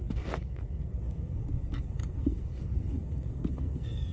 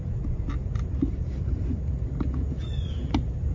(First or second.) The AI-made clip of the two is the first